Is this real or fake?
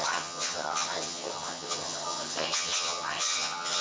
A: fake